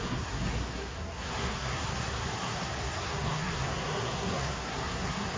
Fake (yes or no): yes